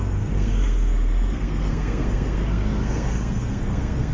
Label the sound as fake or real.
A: fake